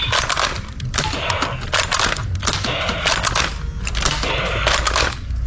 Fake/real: real